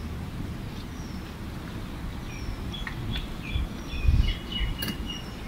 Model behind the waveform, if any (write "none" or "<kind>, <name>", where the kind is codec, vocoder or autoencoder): none